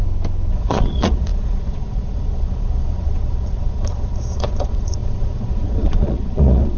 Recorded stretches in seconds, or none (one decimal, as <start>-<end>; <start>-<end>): 0.0-0.5